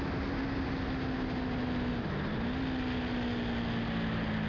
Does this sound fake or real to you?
real